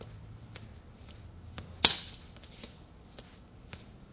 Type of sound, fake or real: real